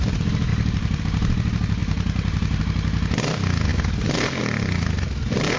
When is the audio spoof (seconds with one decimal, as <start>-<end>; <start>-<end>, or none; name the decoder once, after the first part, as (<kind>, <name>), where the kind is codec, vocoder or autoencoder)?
0.5-1.0 (vocoder, BigVGAN v2); 1.8-2.6

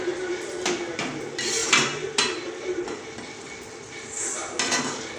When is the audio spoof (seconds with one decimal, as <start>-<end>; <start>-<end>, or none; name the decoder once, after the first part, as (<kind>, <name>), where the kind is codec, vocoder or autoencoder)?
1.6-3.2 (vocoder, BigVGAN v2)

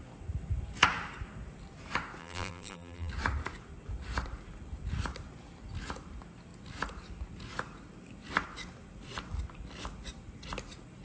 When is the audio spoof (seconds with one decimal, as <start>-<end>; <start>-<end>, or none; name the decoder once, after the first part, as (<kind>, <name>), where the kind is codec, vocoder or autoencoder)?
2.2-3.1 (vocoder, BigVGAN v2)

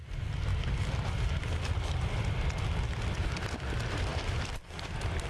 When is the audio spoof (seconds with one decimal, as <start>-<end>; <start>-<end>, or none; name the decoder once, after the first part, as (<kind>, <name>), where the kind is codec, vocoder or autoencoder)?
4.1-5.3 (vocoder, BigVGAN v2)